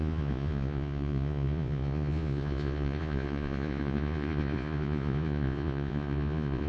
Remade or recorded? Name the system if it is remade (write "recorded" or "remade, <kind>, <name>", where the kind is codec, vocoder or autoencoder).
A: remade, vocoder, Vocos